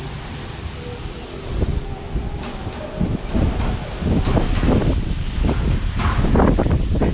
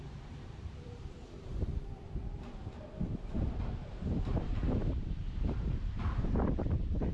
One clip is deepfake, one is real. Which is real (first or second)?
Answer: first